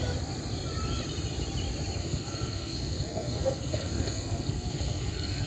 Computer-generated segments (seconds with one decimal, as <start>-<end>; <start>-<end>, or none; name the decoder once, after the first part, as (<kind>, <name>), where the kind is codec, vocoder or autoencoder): 2.0-5.5 (codec, SNAC)